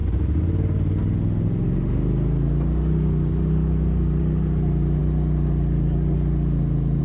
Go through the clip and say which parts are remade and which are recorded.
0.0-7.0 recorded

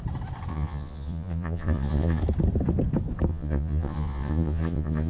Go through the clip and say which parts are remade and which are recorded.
0.0-0.5 recorded; 0.5-2.2 remade; 2.2-3.3 recorded; 3.3-5.1 remade

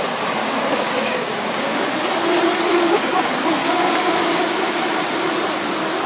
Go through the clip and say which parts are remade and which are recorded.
0.0-0.4 recorded; 0.4-1.8 remade; 1.8-2.7 recorded; 2.7-4.4 remade; 4.4-6.1 recorded

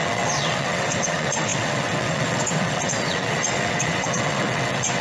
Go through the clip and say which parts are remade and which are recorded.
0.0-5.0 remade

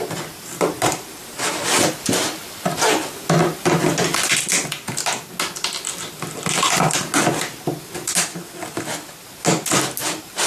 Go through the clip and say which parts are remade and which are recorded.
0.0-10.5 recorded

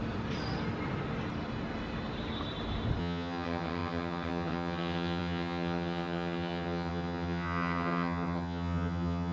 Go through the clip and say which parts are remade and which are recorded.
0.0-3.0 recorded; 3.0-9.3 remade

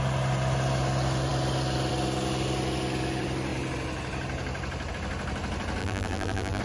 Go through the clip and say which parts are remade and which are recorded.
0.0-5.8 recorded; 5.8-6.6 remade

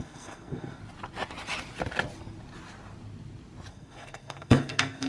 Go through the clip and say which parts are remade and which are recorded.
0.0-0.8 remade; 0.8-3.7 recorded; 3.7-5.1 remade